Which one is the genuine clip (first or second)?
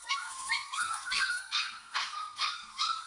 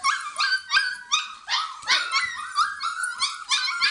second